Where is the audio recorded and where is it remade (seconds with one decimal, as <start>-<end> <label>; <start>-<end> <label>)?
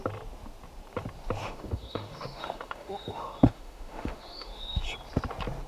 0.0-1.4 recorded; 1.4-4.8 remade; 4.8-5.7 recorded